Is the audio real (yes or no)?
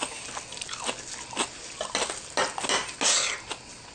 yes